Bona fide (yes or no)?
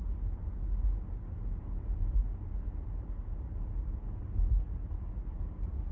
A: yes